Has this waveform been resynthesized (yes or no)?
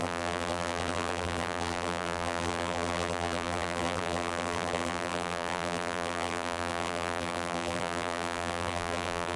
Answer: yes